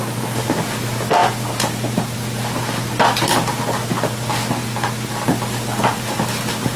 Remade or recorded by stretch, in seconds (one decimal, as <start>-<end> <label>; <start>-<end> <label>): 0.0-6.8 recorded